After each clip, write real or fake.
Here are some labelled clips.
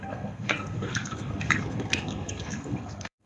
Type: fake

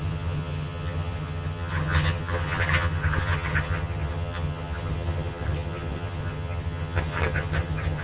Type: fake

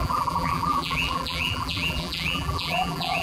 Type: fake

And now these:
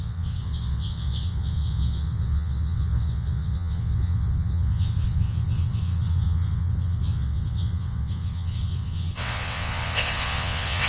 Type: fake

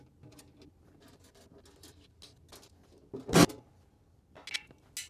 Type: real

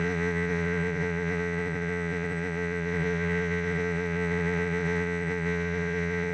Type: fake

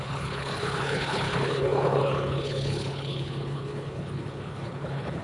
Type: fake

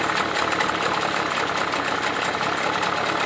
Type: real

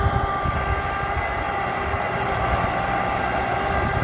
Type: real